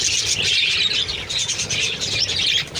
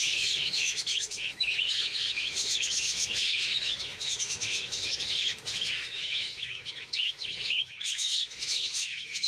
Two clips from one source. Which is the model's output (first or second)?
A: second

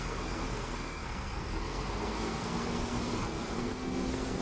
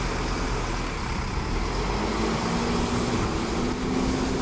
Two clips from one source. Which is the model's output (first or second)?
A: first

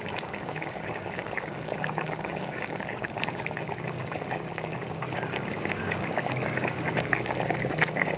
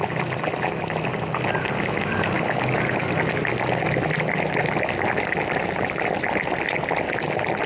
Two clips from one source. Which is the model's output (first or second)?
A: first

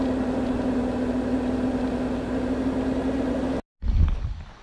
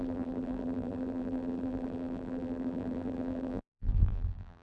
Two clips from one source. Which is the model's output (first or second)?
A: second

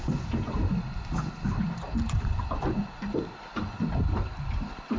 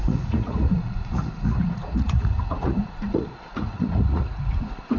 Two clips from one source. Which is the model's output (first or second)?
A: second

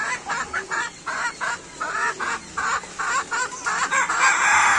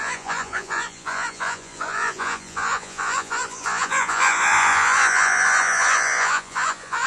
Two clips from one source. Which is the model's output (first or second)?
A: second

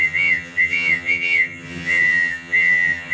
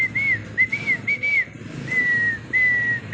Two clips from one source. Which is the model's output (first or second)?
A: first